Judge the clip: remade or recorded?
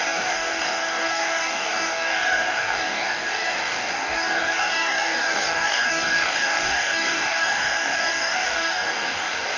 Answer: remade